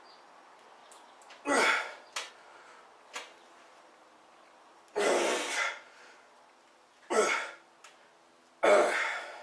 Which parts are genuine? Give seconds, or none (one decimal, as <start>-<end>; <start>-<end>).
0.0-9.4